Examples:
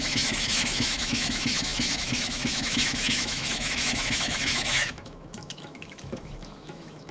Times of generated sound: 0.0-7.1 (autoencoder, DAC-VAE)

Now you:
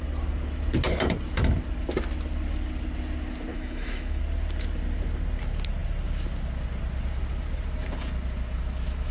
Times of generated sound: 3.5-4.2 (autoencoder, DAC-VAE)

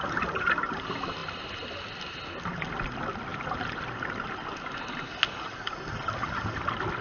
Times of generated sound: none

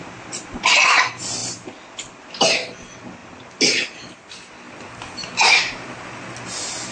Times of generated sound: none

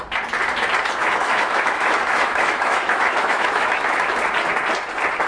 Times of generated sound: 1.0-4.1 (autoencoder, DAC-VAE)

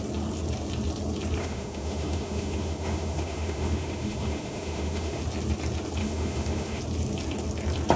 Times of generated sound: 1.4-5.2 (autoencoder, DAC-VAE); 6.0-6.8

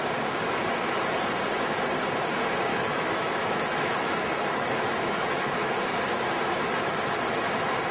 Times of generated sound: 2.7-5.5 (autoencoder, DAC-VAE)